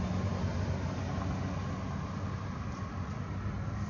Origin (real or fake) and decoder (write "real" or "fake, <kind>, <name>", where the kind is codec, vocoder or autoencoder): real